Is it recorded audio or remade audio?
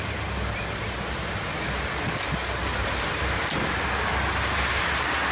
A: recorded